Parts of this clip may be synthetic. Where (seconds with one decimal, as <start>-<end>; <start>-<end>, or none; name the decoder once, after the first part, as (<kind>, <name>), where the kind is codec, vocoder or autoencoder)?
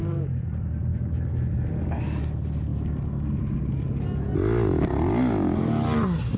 none